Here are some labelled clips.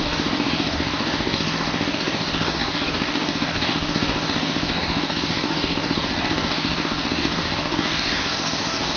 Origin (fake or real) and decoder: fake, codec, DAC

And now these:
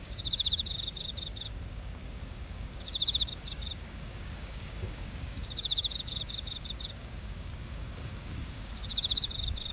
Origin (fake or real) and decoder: fake, codec, DAC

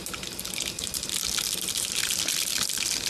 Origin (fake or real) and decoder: real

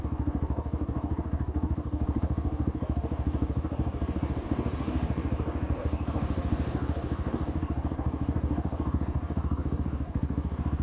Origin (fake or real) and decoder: fake, codec, DAC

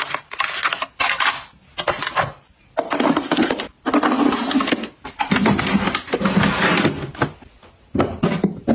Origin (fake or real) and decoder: real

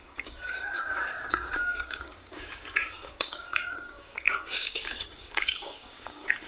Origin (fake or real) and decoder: fake, codec, DAC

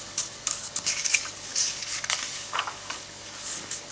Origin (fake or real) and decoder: fake, codec, DAC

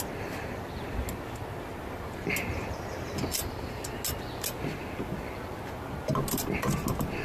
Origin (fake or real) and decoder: real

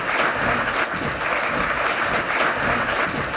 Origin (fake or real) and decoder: real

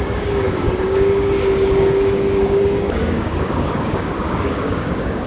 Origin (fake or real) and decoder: fake, codec, DAC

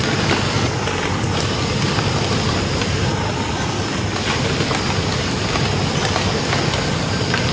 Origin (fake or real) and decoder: real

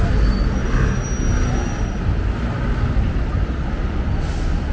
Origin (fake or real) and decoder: real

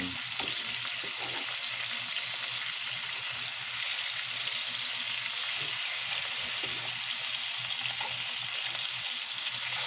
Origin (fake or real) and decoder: real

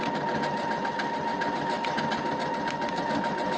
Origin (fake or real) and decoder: real